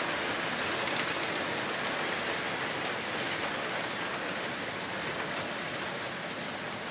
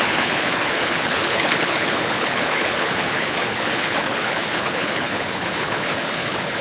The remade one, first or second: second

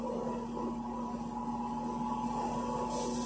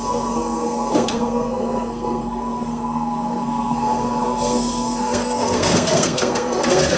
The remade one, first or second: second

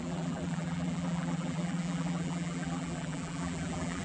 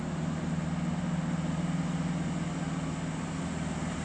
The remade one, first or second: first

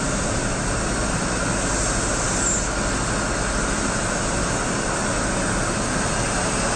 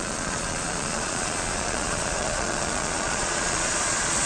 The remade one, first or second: second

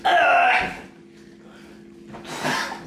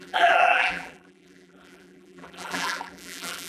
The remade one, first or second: second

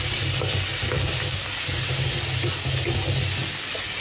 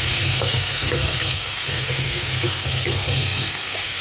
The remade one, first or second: second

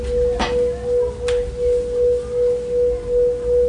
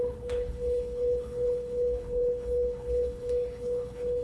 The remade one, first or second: second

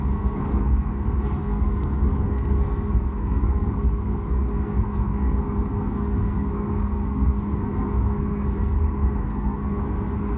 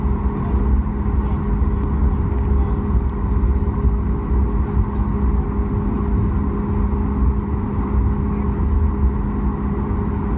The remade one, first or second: first